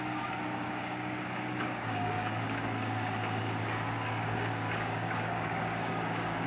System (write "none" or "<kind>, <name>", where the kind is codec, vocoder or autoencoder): codec, DAC